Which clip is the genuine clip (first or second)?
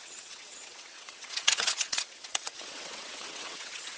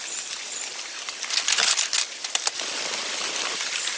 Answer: second